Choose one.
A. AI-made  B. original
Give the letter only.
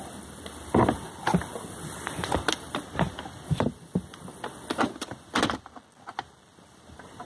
B